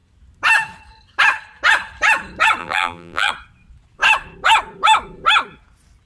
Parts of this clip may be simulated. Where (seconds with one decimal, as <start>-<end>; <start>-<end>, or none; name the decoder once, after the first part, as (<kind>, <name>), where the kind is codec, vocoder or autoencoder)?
2.6-3.3 (vocoder, BigVGAN v2)